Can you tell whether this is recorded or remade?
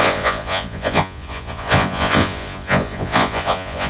remade